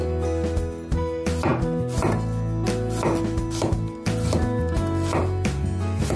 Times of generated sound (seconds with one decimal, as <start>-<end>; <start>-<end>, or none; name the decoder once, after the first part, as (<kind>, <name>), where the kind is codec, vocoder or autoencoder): none